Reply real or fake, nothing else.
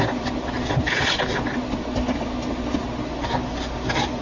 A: real